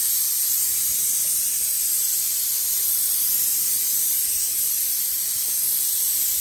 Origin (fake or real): real